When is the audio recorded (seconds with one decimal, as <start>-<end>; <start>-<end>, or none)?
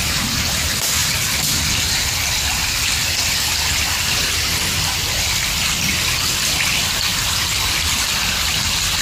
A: 0.0-7.1; 8.0-9.0